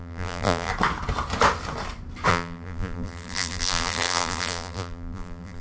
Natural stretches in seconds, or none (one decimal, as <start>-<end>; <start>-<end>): 0.7-2.3

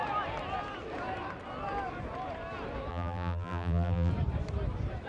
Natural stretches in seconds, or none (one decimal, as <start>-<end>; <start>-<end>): 0.0-2.9; 4.1-5.1

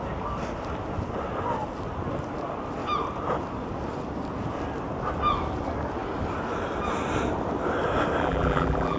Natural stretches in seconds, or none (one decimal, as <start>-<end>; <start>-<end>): 0.0-8.2

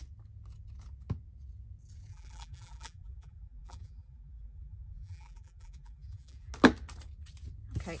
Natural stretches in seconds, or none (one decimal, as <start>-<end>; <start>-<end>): 0.0-2.1; 6.5-8.0

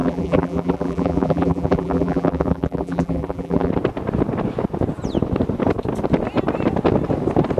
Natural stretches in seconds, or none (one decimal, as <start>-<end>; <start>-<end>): 3.7-7.6

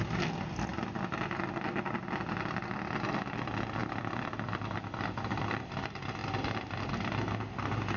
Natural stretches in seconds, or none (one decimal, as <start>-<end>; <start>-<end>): 0.0-3.8; 5.7-6.2; 6.9-8.0

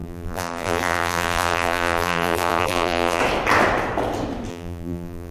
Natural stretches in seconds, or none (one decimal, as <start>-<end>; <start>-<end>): 3.2-4.5

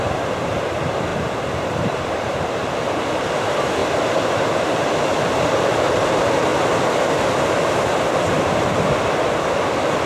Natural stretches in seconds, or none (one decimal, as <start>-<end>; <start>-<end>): 3.8-4.3; 6.5-10.1